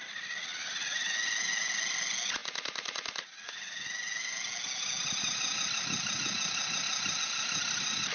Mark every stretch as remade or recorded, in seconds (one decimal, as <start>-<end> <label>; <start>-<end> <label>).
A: 0.0-8.1 recorded